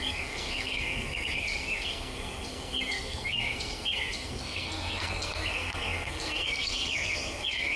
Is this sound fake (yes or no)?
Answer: yes